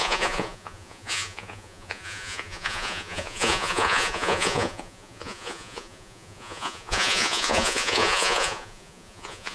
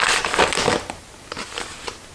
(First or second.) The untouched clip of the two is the second